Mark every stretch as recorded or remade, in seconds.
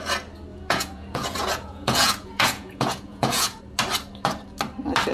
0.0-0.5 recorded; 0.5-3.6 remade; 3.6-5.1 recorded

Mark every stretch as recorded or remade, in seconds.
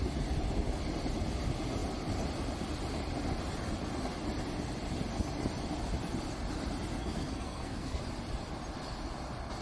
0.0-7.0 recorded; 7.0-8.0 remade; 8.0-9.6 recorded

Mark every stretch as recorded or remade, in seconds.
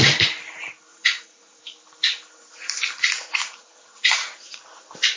0.0-0.9 recorded; 0.9-1.6 remade; 1.6-3.4 recorded; 3.4-4.6 remade; 4.6-5.2 recorded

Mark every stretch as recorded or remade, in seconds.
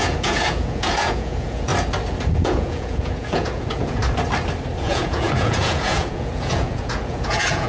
0.0-1.7 remade; 1.7-2.3 recorded; 2.3-4.0 remade; 4.0-4.8 recorded; 4.8-7.7 remade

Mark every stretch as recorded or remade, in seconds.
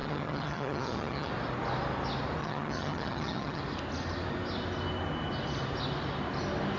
0.0-1.3 remade; 1.3-2.4 recorded; 2.4-3.6 remade; 3.6-6.8 recorded